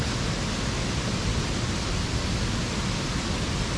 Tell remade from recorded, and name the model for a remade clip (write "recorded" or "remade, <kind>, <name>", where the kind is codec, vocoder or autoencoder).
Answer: recorded